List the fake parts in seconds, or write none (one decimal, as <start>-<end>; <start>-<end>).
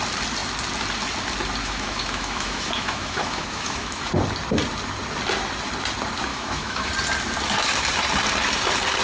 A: 1.6-4.1; 6.3-6.9